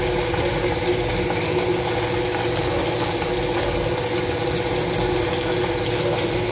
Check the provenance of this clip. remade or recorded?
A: recorded